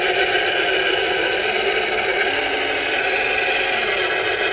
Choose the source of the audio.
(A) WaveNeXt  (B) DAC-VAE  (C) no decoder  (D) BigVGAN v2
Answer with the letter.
C